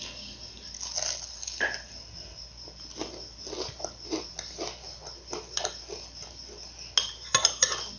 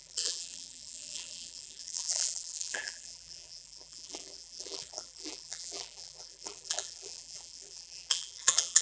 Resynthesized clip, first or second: second